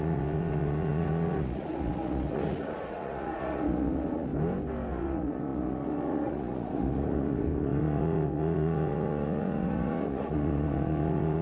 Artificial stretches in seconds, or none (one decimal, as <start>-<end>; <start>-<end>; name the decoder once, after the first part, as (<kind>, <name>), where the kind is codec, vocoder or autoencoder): 0.0-4.3 (vocoder, Vocos); 4.9-11.4